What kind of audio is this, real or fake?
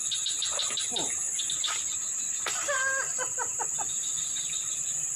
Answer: real